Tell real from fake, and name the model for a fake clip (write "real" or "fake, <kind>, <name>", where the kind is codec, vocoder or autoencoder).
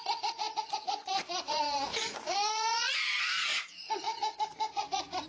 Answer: fake, vocoder, Vocos